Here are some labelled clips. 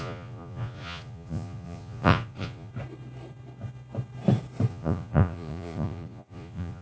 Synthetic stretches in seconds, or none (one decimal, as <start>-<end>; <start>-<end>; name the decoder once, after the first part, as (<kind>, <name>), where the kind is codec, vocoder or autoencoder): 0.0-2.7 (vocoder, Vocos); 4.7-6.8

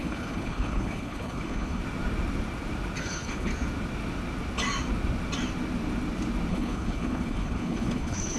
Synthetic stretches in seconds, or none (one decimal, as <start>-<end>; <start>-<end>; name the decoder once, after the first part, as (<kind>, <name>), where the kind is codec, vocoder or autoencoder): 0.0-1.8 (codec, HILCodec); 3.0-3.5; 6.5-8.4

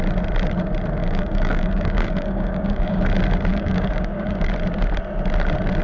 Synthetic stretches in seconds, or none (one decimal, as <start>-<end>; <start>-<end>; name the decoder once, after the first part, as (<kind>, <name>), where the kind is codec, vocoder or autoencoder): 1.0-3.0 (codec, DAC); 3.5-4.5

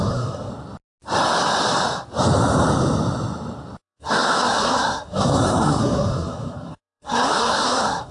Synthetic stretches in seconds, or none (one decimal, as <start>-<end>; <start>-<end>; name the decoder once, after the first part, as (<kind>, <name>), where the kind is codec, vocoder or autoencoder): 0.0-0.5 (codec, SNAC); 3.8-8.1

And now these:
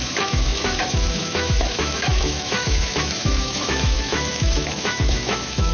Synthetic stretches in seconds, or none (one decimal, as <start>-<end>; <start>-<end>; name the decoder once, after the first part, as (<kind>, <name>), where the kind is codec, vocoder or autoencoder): 0.0-5.7 (autoencoder, DAC-VAE)